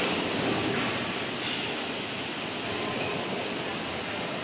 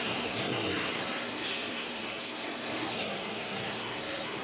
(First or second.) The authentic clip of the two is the first